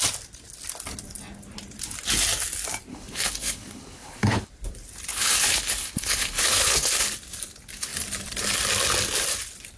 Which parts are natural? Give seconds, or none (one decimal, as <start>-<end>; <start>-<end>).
0.0-2.9; 4.5-5.1; 6.9-9.8